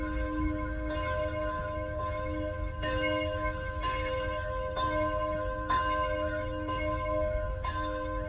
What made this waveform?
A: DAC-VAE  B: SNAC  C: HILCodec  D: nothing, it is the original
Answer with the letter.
A